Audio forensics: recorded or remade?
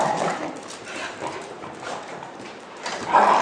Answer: remade